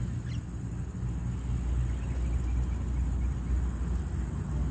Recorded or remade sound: recorded